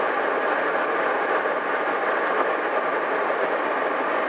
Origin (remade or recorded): recorded